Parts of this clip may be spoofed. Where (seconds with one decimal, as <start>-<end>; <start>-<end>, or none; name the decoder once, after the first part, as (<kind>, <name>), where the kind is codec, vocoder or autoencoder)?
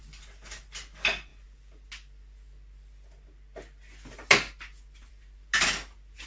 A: none